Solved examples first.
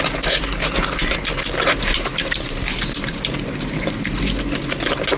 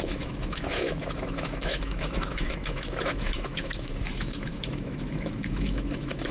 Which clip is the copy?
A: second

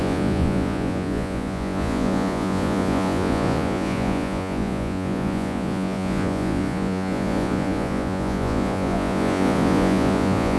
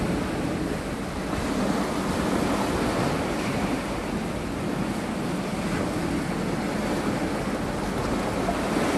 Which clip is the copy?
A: first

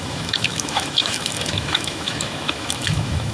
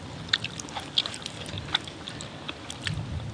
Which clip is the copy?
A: first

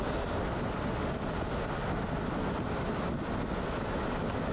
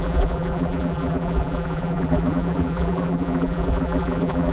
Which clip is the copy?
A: second